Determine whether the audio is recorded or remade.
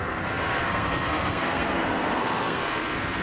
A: remade